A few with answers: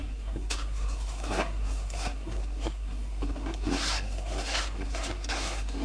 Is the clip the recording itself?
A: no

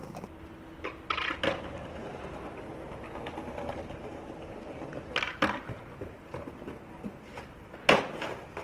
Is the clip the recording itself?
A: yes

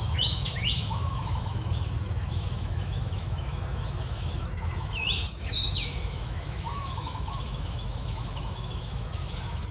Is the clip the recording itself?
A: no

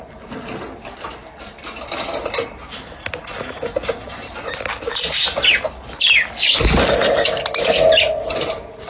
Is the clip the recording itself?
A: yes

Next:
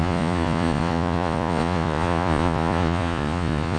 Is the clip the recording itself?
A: no